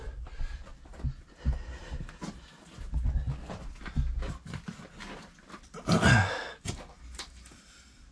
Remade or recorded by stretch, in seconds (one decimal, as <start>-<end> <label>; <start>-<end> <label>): 0.0-8.1 recorded